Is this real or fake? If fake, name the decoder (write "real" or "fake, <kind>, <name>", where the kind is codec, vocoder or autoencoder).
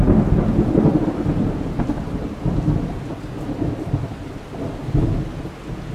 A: real